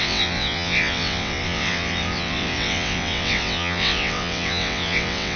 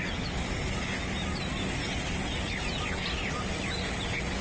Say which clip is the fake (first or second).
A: first